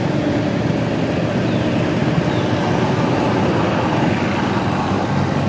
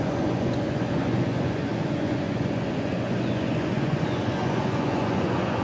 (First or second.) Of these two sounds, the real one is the first